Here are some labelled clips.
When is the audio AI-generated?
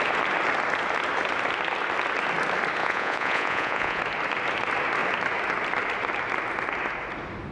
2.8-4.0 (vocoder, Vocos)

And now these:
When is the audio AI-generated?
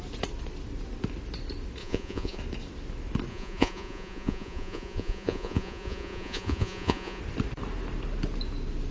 1.8-2.4 (vocoder, Vocos); 3.3-7.2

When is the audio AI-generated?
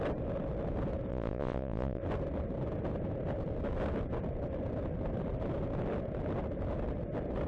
1.1-2.0 (vocoder, Vocos)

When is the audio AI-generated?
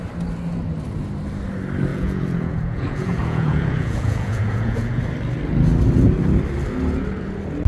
1.9-5.0 (vocoder, Vocos)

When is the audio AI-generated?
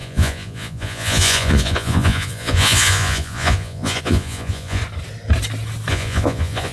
0.0-4.8 (vocoder, Vocos); 5.9-6.7